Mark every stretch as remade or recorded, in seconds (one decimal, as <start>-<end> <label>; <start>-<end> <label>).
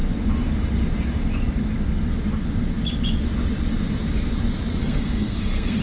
0.0-4.8 recorded; 4.8-5.8 remade